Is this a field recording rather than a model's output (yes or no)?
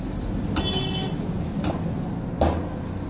yes